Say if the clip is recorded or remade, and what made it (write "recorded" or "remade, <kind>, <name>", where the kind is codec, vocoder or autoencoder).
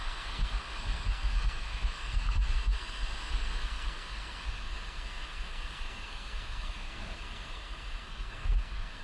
remade, codec, SNAC